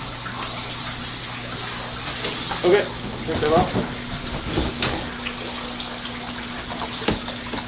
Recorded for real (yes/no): yes